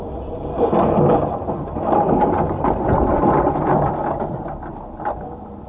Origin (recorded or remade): recorded